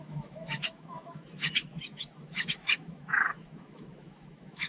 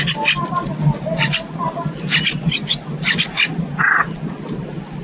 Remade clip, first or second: first